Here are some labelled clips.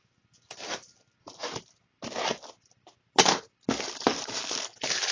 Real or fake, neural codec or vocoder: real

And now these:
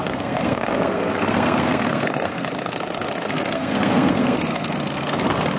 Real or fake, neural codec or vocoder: fake, codec, SNAC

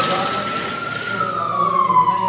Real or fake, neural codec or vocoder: real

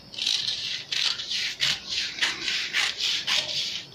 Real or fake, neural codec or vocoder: real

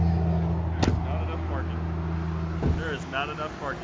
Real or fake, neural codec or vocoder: real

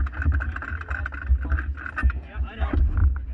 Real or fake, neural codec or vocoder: real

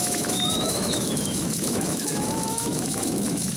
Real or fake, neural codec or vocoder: fake, autoencoder, DAC-VAE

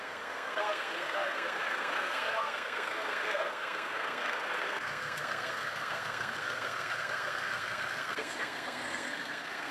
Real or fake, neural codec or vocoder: fake, codec, SNAC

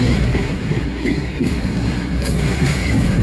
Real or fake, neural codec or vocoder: fake, codec, SNAC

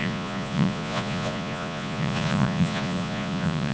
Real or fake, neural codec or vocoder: fake, vocoder, Vocos